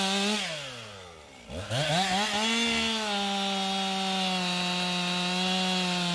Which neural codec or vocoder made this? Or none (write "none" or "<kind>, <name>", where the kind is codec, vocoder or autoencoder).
none